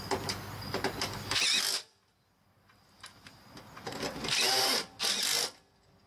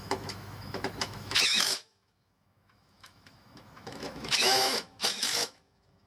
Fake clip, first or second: second